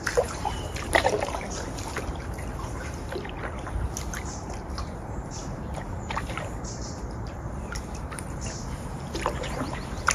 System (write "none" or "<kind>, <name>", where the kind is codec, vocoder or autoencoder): vocoder, BigVGAN v2